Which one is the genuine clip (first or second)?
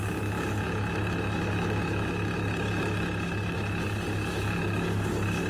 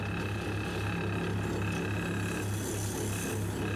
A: second